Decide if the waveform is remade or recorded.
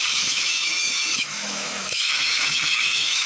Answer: remade